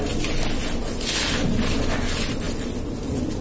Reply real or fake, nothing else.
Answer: real